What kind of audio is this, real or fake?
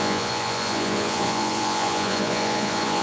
fake